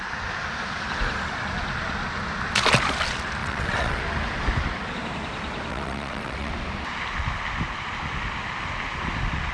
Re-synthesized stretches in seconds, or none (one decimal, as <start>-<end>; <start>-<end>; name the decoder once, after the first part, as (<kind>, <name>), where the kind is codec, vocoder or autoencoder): 3.4-4.0 (vocoder, WaveNeXt); 5.7-6.5